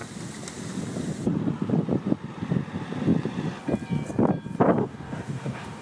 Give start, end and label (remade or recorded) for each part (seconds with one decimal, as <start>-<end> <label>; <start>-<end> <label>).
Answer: 0.0-4.8 recorded; 4.8-5.8 remade